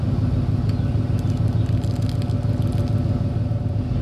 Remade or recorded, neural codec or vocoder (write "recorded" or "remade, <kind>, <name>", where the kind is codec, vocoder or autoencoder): recorded